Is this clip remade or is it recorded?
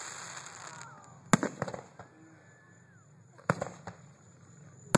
recorded